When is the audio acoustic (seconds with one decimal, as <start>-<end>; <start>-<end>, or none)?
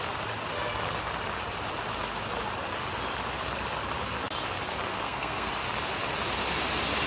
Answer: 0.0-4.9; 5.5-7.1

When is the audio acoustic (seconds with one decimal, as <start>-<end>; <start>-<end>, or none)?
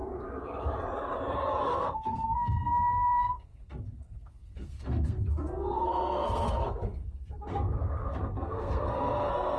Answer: 0.0-1.6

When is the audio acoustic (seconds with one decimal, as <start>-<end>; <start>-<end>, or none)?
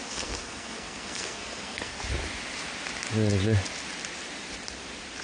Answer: 2.0-5.2